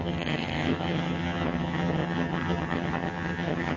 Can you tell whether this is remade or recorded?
remade